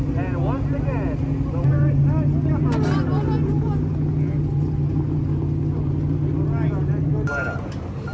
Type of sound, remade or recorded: recorded